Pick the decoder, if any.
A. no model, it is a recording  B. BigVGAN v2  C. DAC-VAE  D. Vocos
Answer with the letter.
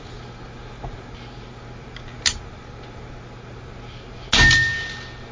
A